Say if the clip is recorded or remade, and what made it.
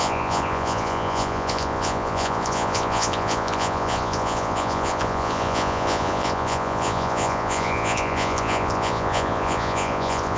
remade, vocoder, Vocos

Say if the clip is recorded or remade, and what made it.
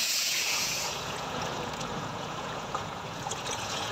remade, vocoder, Vocos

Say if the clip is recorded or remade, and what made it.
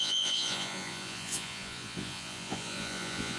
remade, vocoder, Vocos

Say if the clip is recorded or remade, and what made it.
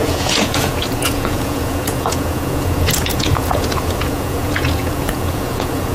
remade, vocoder, Vocos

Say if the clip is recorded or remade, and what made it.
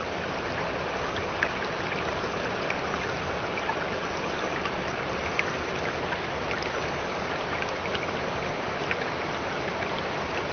recorded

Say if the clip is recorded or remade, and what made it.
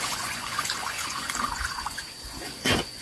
remade, vocoder, Vocos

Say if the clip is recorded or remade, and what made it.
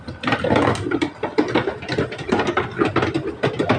recorded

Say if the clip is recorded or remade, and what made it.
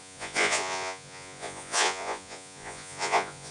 remade, vocoder, Vocos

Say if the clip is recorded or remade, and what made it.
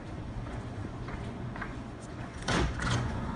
remade, vocoder, Vocos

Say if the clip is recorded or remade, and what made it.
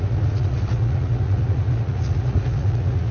remade, vocoder, Vocos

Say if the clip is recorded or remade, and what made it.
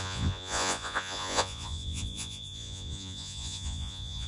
remade, vocoder, Vocos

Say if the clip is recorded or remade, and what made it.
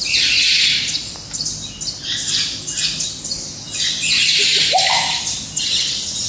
recorded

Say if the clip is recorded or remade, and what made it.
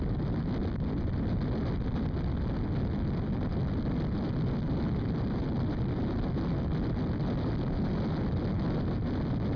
recorded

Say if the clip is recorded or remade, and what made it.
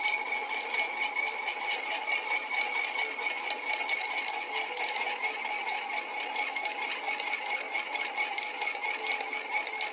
recorded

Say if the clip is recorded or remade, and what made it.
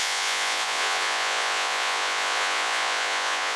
remade, vocoder, Vocos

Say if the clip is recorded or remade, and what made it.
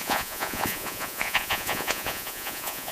remade, vocoder, Vocos